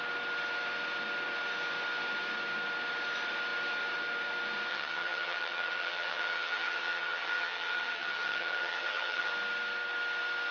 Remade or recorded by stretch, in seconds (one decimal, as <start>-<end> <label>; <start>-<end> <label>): 0.0-4.7 recorded; 4.7-9.3 remade; 9.3-10.5 recorded